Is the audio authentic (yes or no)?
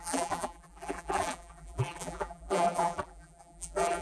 no